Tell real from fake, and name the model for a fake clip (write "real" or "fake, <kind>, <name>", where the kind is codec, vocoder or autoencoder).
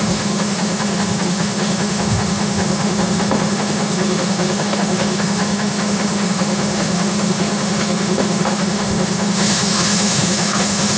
fake, autoencoder, DAC-VAE